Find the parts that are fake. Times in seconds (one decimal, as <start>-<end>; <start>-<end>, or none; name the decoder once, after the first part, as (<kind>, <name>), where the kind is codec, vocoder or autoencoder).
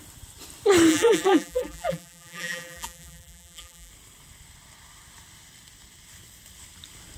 0.9-3.9 (vocoder, BigVGAN v2)